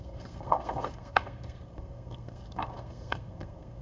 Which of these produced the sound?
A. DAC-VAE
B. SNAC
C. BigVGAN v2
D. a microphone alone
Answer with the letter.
B